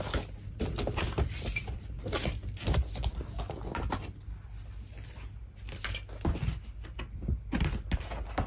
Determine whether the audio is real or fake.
real